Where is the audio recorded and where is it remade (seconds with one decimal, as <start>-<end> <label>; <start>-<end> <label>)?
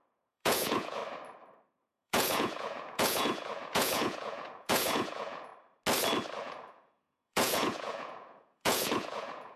0.0-1.0 remade; 1.0-1.8 recorded; 1.8-5.5 remade; 5.5-6.4 recorded; 6.4-9.6 remade